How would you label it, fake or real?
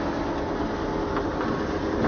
real